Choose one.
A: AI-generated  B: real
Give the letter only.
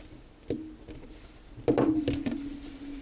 B